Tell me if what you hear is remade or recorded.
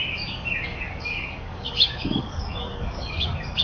remade